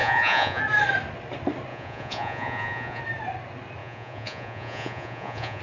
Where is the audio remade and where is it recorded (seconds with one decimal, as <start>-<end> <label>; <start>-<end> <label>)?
0.0-0.6 remade; 0.6-1.7 recorded; 1.7-3.0 remade; 3.0-3.8 recorded; 3.8-5.6 remade